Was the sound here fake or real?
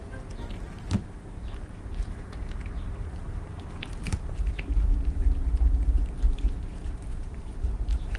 fake